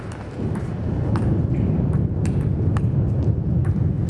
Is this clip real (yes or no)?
yes